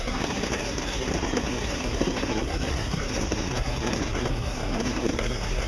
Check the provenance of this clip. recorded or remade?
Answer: remade